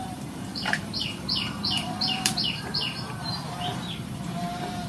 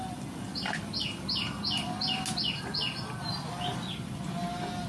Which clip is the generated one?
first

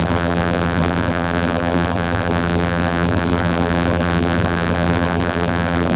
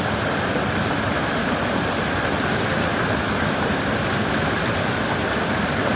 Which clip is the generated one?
first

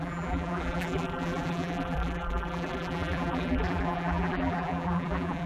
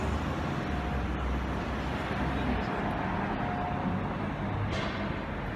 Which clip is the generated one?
first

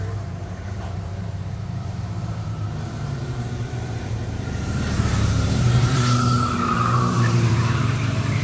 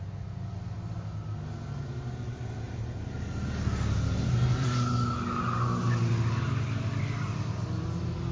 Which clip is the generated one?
first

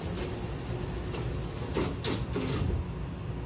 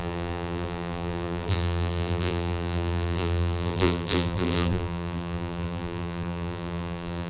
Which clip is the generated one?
second